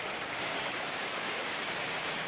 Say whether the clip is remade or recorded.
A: remade